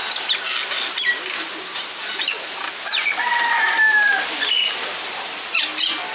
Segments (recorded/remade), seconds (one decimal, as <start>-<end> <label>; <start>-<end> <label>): 0.0-6.1 recorded

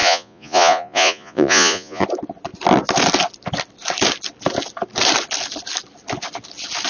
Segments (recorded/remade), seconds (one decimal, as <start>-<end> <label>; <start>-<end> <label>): 0.0-2.0 remade; 2.0-6.9 recorded

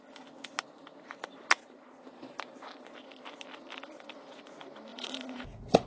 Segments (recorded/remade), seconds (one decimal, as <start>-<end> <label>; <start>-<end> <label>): 0.0-4.9 recorded; 4.9-5.9 remade

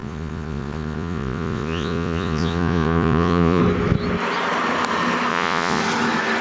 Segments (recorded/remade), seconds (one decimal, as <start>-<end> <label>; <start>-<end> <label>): 0.0-3.6 remade; 3.6-5.3 recorded; 5.3-5.8 remade; 5.8-6.4 recorded

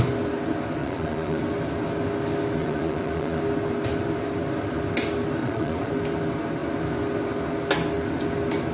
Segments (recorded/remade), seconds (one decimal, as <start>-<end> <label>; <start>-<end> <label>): 0.0-0.8 recorded; 0.8-1.4 remade; 1.4-2.6 recorded; 2.6-3.4 remade; 3.4-5.4 recorded; 5.4-5.9 remade; 5.9-8.7 recorded

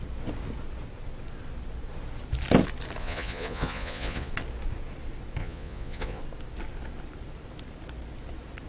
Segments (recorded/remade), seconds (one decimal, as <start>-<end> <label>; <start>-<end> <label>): 0.0-3.0 recorded; 3.0-4.3 remade; 4.3-5.4 recorded; 5.4-6.2 remade; 6.2-8.7 recorded